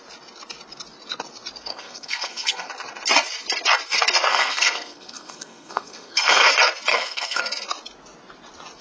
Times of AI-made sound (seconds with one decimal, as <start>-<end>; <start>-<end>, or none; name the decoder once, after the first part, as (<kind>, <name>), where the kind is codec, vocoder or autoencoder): 1.7-2.7 (codec, SNAC); 4.3-6.5; 6.9-7.4